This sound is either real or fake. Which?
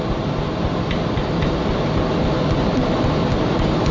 real